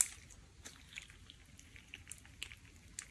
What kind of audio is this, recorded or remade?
recorded